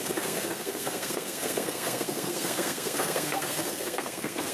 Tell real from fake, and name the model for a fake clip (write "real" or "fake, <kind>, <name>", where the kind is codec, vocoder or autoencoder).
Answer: fake, codec, SNAC